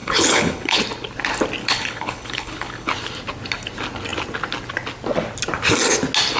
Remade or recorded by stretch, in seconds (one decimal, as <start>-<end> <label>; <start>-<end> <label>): 0.0-0.8 remade; 0.8-1.6 recorded; 1.6-2.9 remade; 2.9-6.4 recorded